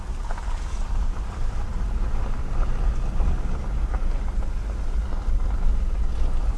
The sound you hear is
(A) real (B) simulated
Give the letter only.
A